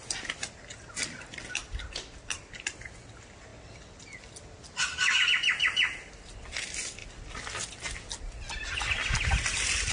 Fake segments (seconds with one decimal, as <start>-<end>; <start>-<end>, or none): none